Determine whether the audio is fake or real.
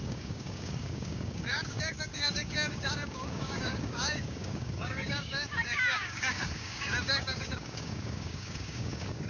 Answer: fake